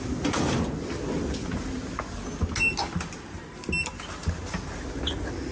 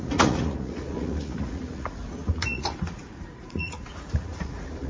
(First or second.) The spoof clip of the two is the second